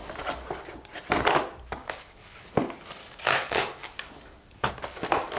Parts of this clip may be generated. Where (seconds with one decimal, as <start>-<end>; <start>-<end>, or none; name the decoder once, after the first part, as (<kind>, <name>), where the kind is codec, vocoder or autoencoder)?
1.8-2.4 (codec, DAC); 3.0-4.7